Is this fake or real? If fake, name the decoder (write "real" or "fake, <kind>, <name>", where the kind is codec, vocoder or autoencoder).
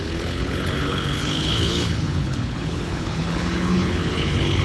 fake, codec, HILCodec